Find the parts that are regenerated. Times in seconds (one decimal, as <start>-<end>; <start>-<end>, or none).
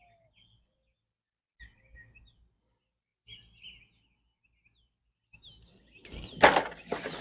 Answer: none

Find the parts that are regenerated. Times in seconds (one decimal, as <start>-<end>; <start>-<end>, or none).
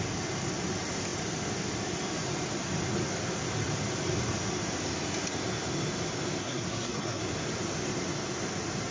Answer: 6.4-7.2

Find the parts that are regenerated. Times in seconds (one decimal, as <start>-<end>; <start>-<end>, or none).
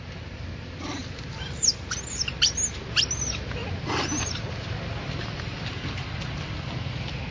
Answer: none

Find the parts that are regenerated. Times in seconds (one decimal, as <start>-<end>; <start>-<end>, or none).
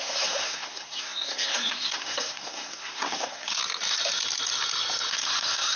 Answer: 0.0-3.6; 5.1-5.8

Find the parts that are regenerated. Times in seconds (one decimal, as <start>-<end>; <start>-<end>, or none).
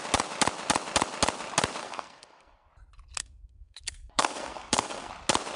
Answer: 1.8-2.7; 3.2-5.1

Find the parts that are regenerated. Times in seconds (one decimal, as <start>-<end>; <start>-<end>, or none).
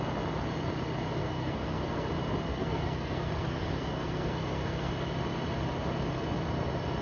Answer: 1.2-2.1; 2.5-4.9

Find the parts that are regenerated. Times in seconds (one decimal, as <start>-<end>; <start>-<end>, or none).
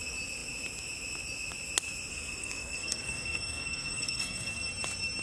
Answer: 2.1-4.7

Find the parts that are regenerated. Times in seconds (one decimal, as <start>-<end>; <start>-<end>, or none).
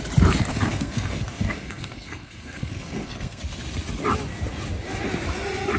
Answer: 0.5-3.4